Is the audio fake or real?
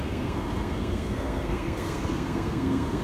fake